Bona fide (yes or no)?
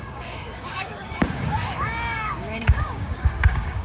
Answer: no